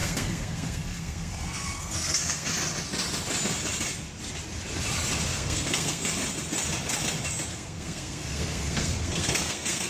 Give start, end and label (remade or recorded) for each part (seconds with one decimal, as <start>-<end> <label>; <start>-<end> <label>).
0.0-2.5 remade; 2.5-5.3 recorded; 5.3-6.1 remade; 6.1-7.5 recorded; 7.5-9.9 remade